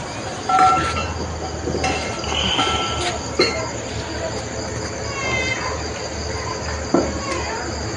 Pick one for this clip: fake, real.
real